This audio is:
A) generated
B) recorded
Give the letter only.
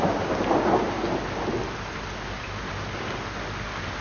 B